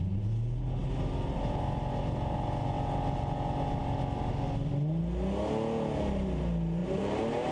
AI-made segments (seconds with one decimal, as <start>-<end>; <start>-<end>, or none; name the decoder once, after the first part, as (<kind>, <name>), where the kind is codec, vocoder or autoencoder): 6.8-7.5 (vocoder, BigVGAN v2)